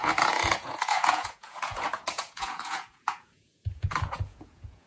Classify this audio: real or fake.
fake